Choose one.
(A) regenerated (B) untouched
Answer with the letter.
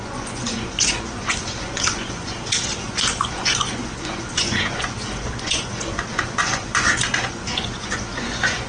A